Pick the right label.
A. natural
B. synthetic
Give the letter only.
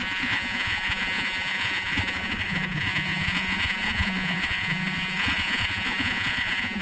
B